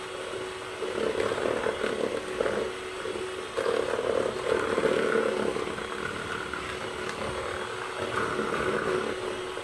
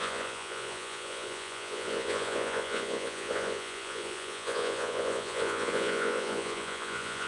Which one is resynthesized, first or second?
second